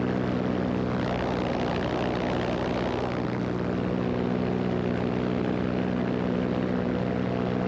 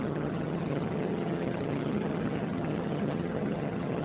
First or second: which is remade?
second